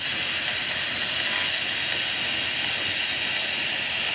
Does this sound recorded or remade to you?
recorded